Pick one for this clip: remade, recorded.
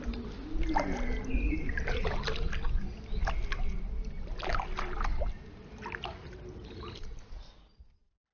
recorded